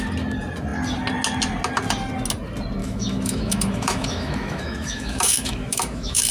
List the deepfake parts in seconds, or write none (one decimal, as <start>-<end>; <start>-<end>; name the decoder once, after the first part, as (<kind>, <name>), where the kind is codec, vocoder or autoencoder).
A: 2.8-6.3 (autoencoder, DAC-VAE)